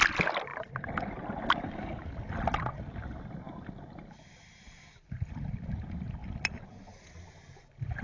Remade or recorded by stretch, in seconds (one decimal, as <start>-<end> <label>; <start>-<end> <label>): 0.0-8.0 recorded

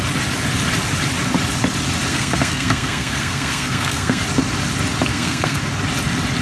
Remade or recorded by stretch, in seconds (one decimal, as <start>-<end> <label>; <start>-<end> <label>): 0.0-2.1 recorded; 2.1-4.2 remade; 4.2-5.1 recorded; 5.1-5.6 remade; 5.6-6.4 recorded